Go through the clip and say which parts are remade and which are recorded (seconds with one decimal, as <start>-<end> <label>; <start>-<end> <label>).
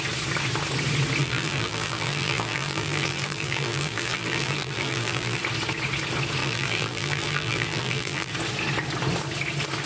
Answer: 0.0-1.2 recorded; 1.2-5.4 remade; 5.4-6.4 recorded; 6.4-8.3 remade; 8.3-9.9 recorded